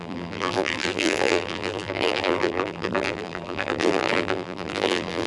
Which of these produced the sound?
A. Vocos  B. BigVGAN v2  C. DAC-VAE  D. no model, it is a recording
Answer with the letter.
B